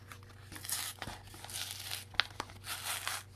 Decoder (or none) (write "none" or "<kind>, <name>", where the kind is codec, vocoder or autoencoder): none